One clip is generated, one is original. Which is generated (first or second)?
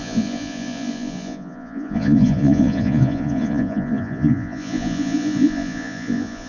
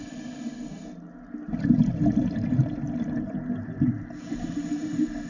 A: first